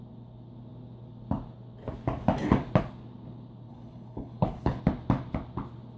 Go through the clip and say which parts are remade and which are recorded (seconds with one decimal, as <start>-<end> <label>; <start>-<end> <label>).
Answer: 0.0-3.7 recorded; 3.7-4.8 remade; 4.8-6.0 recorded